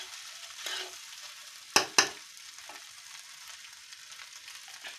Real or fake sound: real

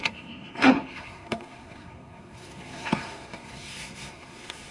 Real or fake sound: fake